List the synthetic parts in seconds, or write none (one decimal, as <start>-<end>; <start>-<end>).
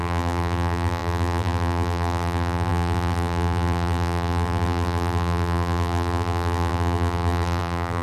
0.0-8.0